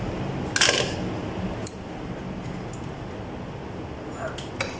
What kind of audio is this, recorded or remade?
recorded